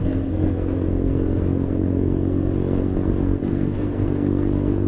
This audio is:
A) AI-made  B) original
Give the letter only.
A